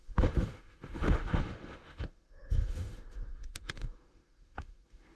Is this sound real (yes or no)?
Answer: no